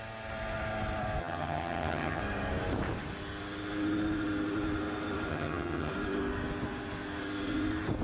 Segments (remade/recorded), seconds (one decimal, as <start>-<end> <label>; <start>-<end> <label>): 0.0-1.2 recorded; 1.2-2.2 remade; 2.2-5.3 recorded; 5.3-5.9 remade; 5.9-8.0 recorded